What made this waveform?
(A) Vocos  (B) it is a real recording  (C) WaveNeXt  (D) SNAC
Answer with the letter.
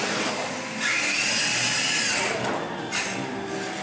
B